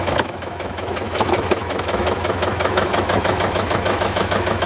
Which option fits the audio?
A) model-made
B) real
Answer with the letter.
A